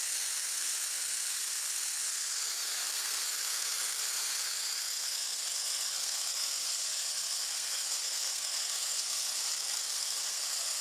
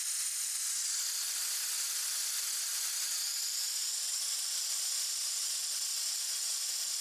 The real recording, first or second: second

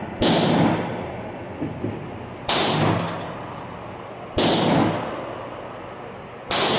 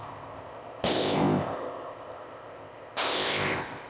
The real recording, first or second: first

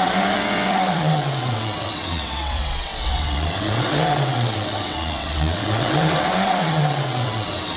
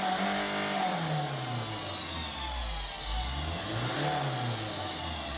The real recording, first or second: second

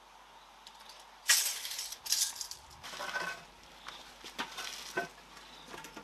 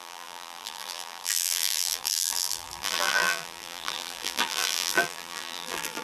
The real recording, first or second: first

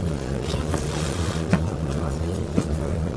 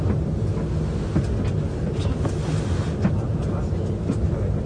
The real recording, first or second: second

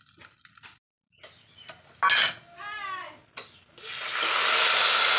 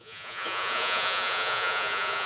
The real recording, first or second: first